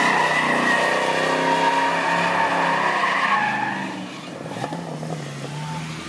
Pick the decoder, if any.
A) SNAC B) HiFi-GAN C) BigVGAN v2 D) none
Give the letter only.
D